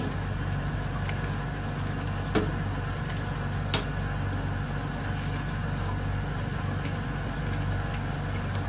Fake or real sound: real